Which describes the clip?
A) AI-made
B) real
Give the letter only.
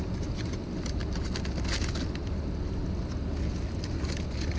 B